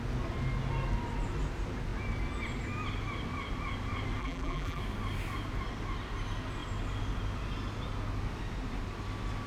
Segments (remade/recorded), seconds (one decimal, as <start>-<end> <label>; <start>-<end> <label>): 0.0-4.2 recorded; 4.2-4.8 remade; 4.8-9.5 recorded